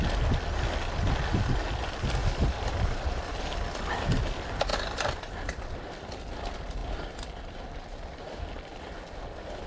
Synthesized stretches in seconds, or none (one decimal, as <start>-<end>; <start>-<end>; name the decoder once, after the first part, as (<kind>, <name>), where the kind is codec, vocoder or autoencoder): 2.2-3.4 (vocoder, BigVGAN v2); 4.7-6.2; 6.8-8.4